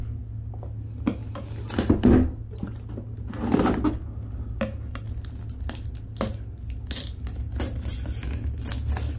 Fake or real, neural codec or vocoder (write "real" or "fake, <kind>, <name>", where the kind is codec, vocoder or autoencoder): real